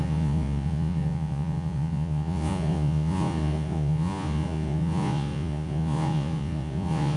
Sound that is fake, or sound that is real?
fake